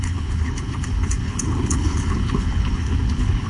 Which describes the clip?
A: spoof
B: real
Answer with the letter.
A